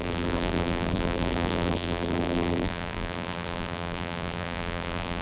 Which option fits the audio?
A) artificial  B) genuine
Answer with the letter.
A